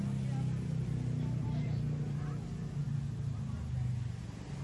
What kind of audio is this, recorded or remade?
recorded